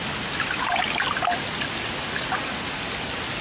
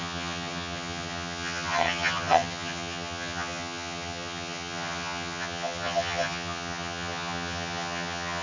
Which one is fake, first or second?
second